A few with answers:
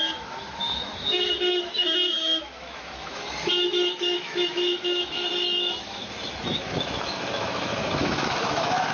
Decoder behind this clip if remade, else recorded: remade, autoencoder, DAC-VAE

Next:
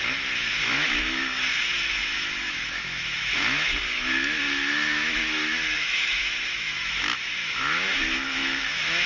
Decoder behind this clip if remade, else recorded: remade, autoencoder, DAC-VAE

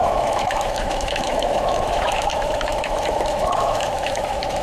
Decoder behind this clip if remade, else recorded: remade, autoencoder, DAC-VAE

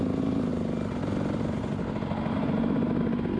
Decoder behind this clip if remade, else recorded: recorded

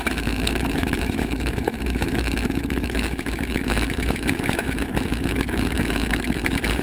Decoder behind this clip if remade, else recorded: remade, autoencoder, DAC-VAE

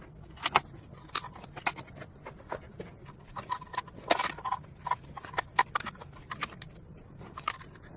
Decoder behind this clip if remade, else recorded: recorded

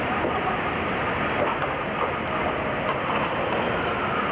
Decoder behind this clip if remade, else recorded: recorded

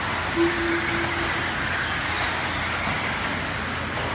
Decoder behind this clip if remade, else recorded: recorded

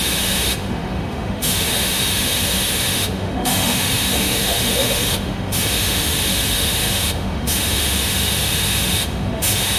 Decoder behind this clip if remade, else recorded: remade, autoencoder, DAC-VAE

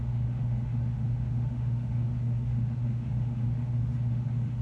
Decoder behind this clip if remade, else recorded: remade, autoencoder, DAC-VAE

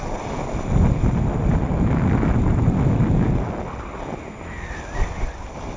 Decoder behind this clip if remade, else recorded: recorded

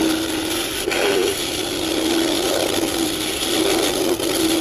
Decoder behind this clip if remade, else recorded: recorded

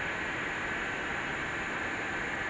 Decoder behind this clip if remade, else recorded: recorded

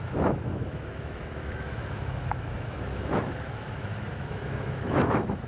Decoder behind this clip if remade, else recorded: remade, autoencoder, DAC-VAE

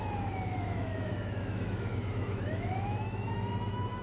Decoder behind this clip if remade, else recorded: remade, autoencoder, DAC-VAE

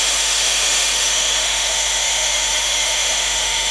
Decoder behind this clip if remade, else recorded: remade, autoencoder, DAC-VAE